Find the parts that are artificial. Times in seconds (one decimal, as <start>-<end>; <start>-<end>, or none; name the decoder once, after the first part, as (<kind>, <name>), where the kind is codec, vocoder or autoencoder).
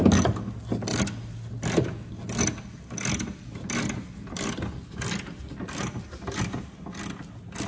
none